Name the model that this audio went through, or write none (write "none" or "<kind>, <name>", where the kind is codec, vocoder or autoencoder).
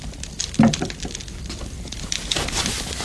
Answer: vocoder, BigVGAN v2